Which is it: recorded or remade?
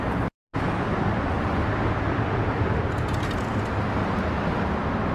recorded